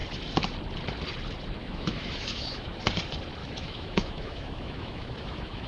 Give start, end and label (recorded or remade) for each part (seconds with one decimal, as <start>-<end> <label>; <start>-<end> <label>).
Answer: 0.0-1.6 recorded; 1.6-2.8 remade; 2.8-3.4 recorded; 3.4-5.7 remade